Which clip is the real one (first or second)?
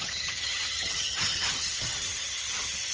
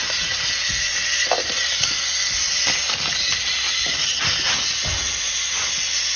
second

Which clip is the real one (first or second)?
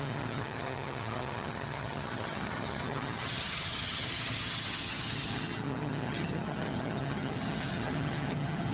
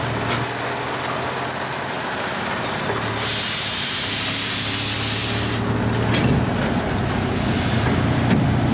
second